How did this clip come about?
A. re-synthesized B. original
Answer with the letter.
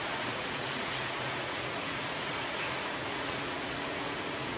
A